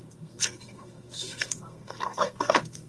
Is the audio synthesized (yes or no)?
yes